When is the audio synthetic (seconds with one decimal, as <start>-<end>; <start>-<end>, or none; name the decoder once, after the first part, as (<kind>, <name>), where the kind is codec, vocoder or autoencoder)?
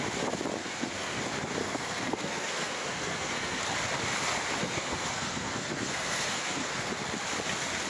0.6-1.2 (codec, SNAC); 1.6-3.6; 4.6-6.9